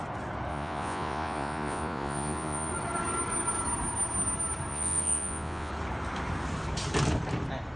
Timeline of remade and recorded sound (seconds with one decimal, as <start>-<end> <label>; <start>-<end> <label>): 0.0-0.5 recorded; 0.5-2.7 remade; 2.7-4.7 recorded; 4.7-5.7 remade; 5.7-7.8 recorded